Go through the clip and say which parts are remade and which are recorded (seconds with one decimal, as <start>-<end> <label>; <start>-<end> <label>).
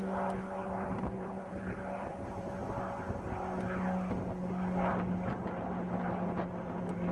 0.0-0.6 recorded; 0.6-2.6 remade; 2.6-7.1 recorded